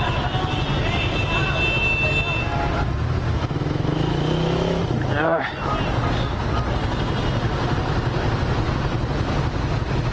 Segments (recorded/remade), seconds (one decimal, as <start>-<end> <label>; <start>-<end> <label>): 0.0-3.3 recorded; 3.3-4.8 remade; 4.8-10.1 recorded